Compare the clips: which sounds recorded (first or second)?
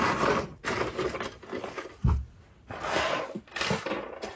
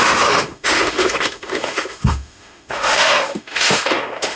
first